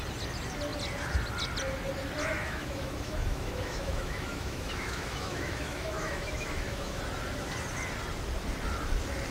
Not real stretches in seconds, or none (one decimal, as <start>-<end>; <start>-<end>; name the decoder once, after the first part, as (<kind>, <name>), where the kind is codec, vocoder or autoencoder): 2.2-7.0 (autoencoder, DAC-VAE)